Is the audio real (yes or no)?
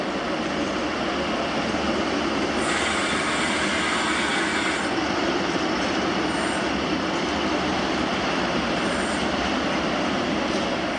yes